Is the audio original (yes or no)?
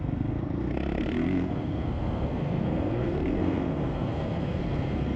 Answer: no